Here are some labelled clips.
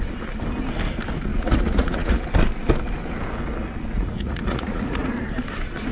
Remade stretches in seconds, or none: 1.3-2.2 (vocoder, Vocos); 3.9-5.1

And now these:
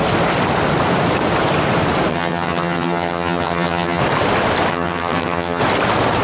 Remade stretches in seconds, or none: 2.1-4.0 (vocoder, HiFi-GAN); 4.7-5.6

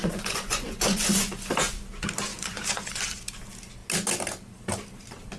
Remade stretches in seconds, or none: 0.0-1.3 (vocoder, Vocos); 2.3-3.2

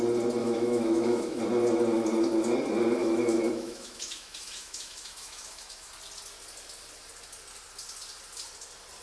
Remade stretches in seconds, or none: 0.4-1.4 (autoencoder, DAC-VAE); 3.0-5.9